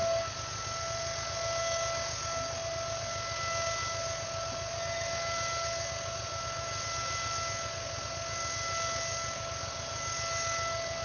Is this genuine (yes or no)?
yes